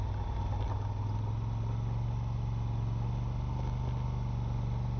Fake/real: real